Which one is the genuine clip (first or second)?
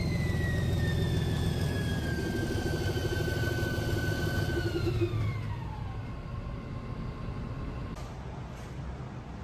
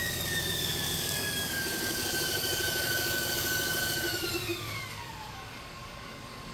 first